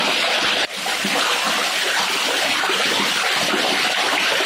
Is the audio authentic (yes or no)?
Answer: no